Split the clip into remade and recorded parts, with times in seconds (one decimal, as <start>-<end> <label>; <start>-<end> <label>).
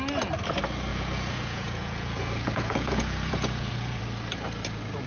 0.0-0.9 recorded; 0.9-4.0 remade; 4.0-5.1 recorded